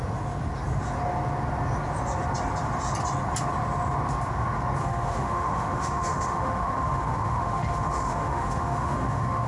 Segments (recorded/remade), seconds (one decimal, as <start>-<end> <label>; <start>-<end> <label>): 0.0-4.8 recorded; 4.8-9.5 remade